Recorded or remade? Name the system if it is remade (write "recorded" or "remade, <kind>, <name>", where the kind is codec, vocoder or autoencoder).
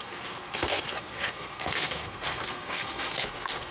remade, codec, SNAC